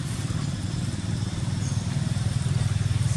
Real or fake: real